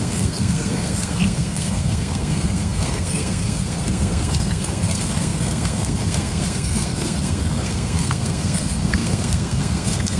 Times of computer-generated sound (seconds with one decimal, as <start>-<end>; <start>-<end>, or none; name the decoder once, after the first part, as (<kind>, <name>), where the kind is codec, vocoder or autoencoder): 0.0-10.2 (codec, SNAC)